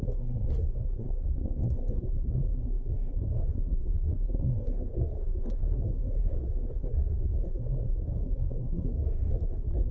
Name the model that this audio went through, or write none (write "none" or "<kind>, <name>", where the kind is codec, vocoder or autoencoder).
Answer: codec, SNAC